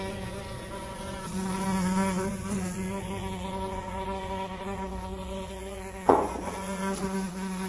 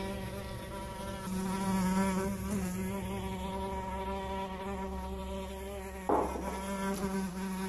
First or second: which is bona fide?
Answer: second